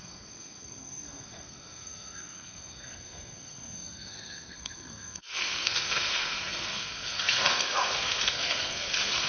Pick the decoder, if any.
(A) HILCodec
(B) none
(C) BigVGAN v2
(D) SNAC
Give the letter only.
D